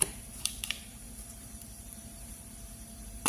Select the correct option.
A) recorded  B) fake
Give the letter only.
B